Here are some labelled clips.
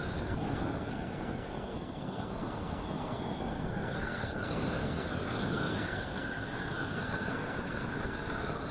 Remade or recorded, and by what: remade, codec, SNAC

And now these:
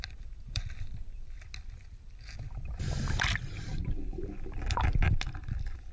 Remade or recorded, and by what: remade, vocoder, BigVGAN v2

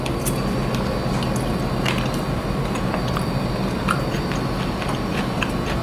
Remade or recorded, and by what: recorded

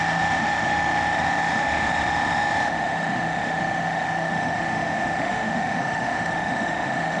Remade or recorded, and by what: remade, autoencoder, DAC-VAE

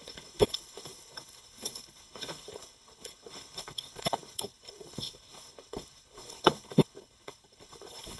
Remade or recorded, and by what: remade, codec, HILCodec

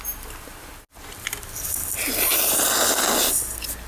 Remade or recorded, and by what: recorded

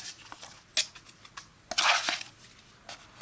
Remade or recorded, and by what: recorded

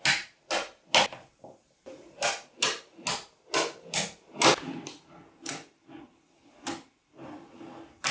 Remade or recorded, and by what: recorded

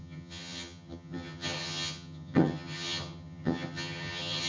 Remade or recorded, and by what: remade, vocoder, HiFi-GAN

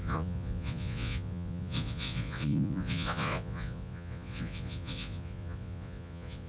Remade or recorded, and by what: remade, vocoder, Vocos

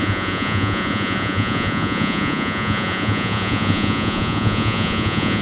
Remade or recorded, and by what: remade, vocoder, Vocos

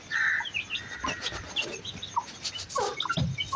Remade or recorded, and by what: recorded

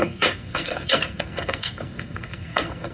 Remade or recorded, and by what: remade, codec, SNAC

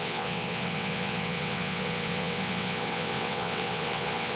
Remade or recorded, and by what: remade, vocoder, WaveNeXt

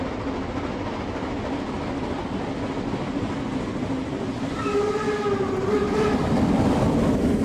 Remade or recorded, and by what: recorded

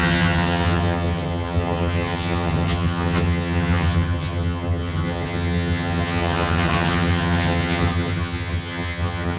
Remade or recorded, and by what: remade, vocoder, HiFi-GAN